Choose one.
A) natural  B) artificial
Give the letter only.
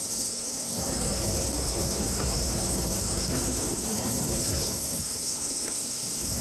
B